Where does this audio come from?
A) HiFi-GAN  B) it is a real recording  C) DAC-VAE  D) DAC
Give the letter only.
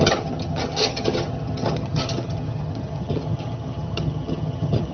A